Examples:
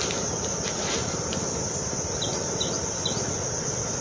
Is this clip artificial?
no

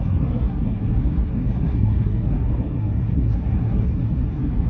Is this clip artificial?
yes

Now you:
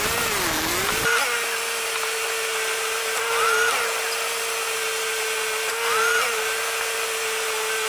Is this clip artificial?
no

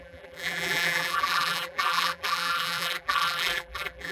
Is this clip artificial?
yes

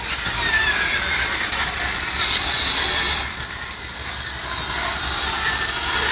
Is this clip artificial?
no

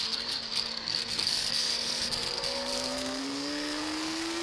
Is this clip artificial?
yes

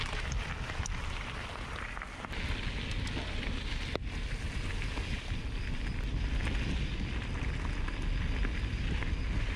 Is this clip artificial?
no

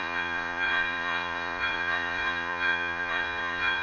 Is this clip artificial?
yes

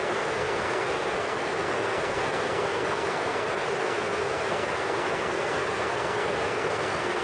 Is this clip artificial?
yes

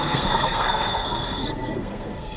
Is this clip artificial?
yes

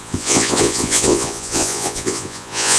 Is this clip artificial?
yes